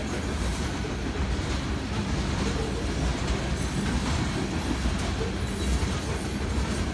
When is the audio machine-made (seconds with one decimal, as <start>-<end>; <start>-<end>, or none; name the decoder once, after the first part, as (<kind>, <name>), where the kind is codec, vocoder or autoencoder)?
none